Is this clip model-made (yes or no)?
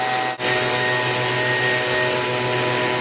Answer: no